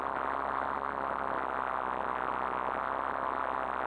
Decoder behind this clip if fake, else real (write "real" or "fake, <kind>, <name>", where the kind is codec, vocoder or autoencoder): real